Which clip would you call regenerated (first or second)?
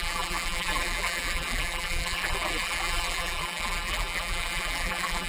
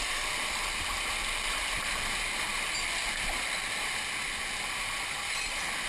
first